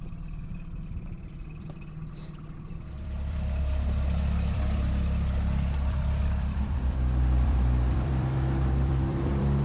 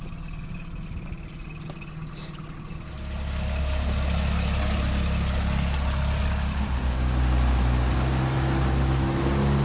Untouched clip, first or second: second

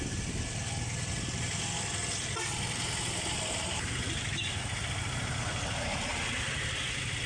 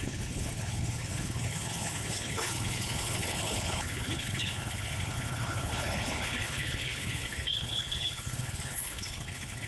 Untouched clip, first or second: first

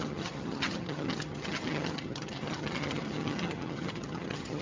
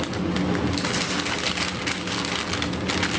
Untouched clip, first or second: second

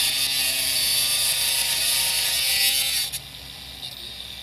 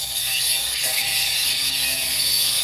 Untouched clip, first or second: first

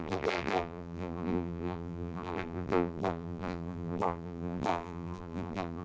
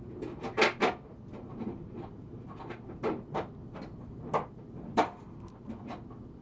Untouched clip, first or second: second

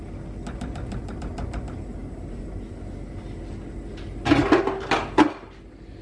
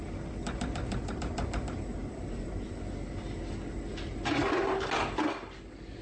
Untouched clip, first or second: first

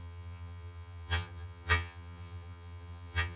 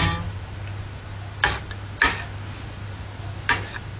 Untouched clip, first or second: second